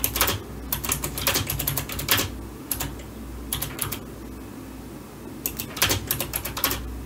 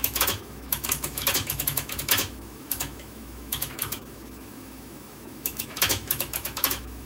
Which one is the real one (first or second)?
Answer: first